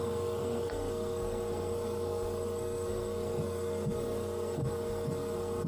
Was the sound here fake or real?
fake